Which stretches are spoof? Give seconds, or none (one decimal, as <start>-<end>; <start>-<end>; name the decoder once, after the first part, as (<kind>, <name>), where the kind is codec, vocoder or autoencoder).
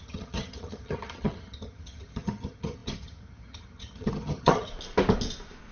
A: 0.0-4.7 (vocoder, HiFi-GAN)